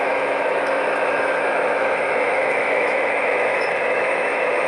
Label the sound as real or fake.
fake